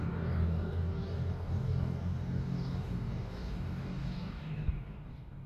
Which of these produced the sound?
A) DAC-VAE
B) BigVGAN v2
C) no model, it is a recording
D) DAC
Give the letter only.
D